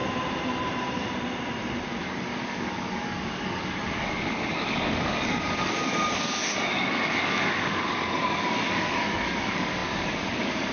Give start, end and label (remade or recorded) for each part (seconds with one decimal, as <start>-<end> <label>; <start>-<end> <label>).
0.0-2.0 recorded; 2.0-10.7 remade